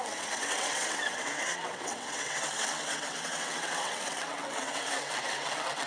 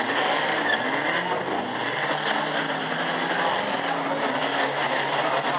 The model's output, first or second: first